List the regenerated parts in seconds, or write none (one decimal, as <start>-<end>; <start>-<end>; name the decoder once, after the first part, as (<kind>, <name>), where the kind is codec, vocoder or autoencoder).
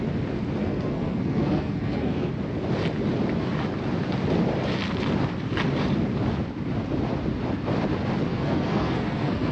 0.6-2.3 (codec, SNAC); 8.3-9.5